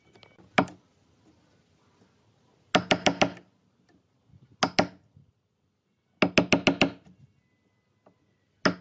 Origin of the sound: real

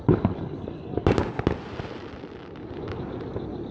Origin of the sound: real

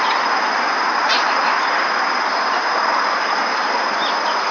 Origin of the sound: real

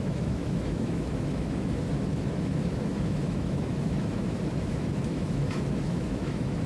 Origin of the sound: fake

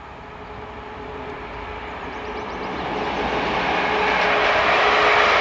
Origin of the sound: real